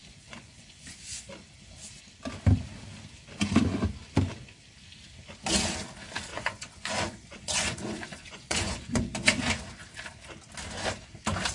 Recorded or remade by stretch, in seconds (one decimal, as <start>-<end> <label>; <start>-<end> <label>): 0.0-1.2 remade; 1.2-6.3 recorded; 6.3-9.0 remade; 9.0-11.5 recorded